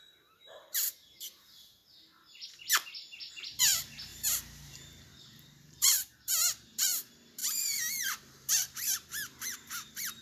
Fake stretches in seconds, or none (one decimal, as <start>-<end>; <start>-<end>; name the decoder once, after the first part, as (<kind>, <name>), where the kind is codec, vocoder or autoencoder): 0.0-1.8 (vocoder, BigVGAN v2); 3.3-10.2